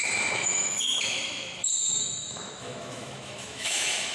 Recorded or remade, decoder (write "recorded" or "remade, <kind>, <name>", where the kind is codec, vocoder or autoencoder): remade, autoencoder, DAC-VAE